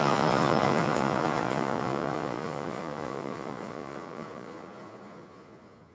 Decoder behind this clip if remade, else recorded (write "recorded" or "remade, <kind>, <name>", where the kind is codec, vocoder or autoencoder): remade, vocoder, Vocos